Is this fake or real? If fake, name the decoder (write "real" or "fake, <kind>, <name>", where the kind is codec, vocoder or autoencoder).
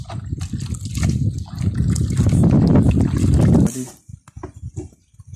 real